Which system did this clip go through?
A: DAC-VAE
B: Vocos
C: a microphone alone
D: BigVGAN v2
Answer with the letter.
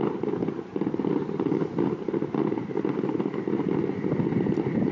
C